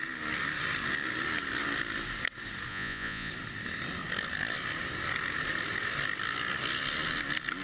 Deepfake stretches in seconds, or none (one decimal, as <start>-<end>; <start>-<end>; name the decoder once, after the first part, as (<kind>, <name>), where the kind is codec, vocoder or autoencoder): 2.7-3.3 (vocoder, Vocos)